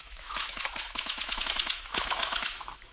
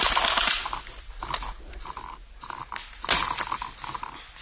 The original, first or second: second